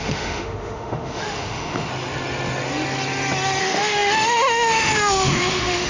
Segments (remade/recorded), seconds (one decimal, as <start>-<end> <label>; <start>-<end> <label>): 0.0-1.9 remade; 1.9-3.6 recorded; 3.6-5.9 remade